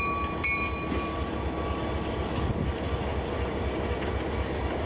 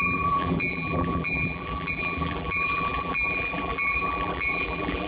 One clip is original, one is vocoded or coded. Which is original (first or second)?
first